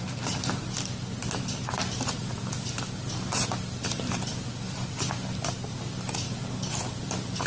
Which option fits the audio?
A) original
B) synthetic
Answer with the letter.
A